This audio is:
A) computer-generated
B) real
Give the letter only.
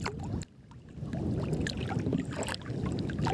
B